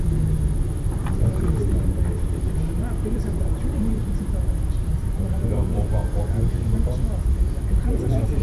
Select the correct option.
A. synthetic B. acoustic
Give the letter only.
A